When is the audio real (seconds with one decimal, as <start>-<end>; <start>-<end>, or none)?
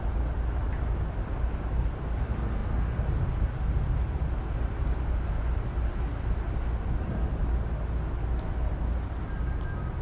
0.0-10.0